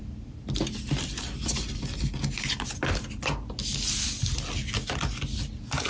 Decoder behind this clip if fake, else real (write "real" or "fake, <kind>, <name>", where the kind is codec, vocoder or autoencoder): real